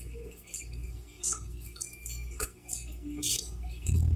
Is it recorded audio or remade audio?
remade